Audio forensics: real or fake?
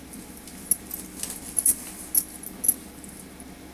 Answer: real